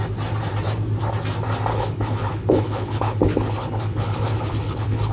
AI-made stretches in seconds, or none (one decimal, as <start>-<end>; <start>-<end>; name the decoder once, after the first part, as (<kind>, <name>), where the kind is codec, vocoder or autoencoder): 1.7-5.1 (codec, HILCodec)